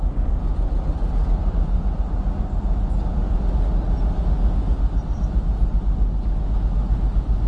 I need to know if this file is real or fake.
real